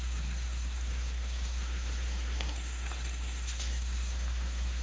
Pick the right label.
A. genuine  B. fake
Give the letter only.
B